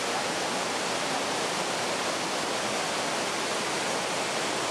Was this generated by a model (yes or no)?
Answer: no